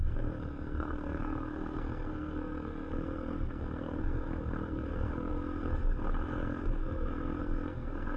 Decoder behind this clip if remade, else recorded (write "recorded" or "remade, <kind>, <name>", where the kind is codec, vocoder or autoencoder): remade, codec, SNAC